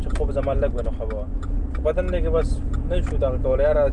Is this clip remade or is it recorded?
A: recorded